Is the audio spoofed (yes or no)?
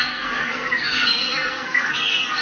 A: yes